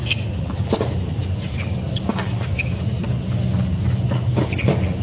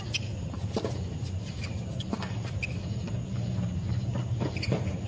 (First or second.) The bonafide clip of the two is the first